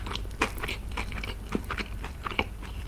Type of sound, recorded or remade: recorded